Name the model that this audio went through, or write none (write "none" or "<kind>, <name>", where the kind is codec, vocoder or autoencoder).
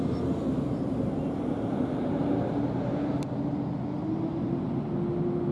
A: none